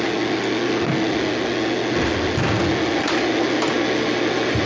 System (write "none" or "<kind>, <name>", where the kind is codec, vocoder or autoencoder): none